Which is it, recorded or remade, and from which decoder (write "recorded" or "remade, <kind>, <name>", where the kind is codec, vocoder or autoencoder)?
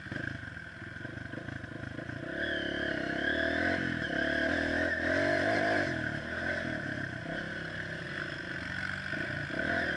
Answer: recorded